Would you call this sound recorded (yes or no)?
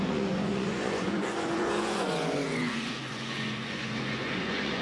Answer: no